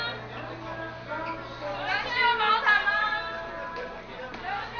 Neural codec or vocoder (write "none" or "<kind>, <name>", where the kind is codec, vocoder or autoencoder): none